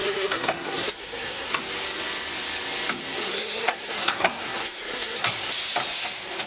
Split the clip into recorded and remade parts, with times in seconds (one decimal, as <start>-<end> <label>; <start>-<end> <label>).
0.0-1.6 remade; 1.6-3.2 recorded; 3.2-5.5 remade; 5.5-6.5 recorded